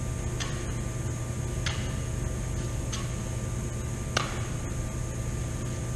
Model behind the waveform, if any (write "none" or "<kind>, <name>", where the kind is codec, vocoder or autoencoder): none